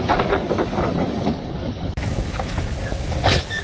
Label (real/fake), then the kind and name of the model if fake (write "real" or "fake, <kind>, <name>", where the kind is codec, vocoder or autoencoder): fake, codec, DAC